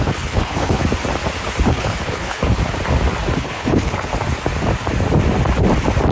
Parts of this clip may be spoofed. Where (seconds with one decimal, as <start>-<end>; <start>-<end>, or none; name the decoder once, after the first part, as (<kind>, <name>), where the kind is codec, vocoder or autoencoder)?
0.0-0.8 (codec, HILCodec); 1.7-2.6; 3.4-4.1